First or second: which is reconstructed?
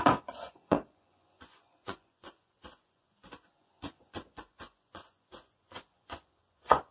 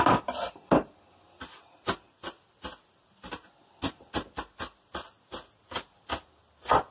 first